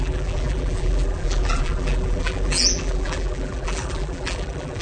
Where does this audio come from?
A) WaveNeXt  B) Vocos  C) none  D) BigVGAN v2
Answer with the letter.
D